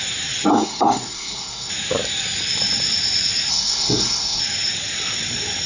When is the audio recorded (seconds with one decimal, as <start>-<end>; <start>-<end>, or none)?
0.0-0.5; 1.7-3.5; 4.4-5.7